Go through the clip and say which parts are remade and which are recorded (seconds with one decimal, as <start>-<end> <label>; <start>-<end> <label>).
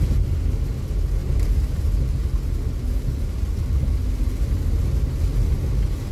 0.0-1.2 recorded; 1.2-1.8 remade; 1.8-6.1 recorded